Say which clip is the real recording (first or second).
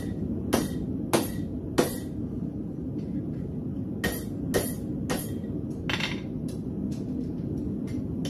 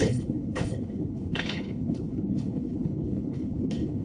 first